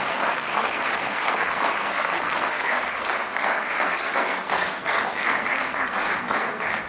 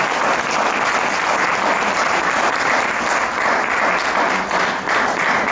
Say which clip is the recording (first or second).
second